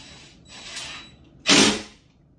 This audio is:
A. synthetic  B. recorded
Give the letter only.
B